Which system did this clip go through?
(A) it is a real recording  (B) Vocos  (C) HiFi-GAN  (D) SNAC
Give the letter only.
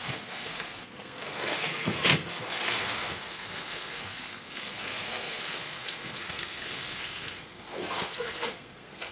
D